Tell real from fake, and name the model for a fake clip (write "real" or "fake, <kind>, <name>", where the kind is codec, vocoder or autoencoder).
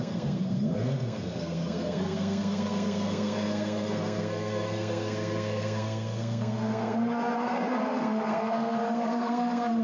fake, codec, SNAC